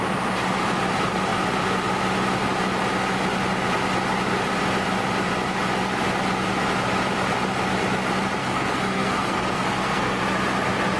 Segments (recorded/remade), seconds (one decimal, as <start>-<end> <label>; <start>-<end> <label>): 0.0-8.4 recorded; 8.4-10.2 remade; 10.2-11.0 recorded